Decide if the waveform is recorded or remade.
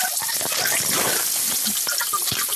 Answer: recorded